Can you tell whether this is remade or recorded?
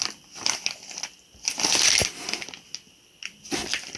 recorded